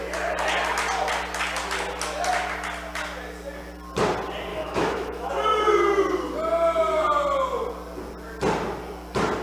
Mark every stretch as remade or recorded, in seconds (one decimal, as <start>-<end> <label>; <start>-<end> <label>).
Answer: 0.0-4.5 recorded; 4.5-5.3 remade; 5.3-9.4 recorded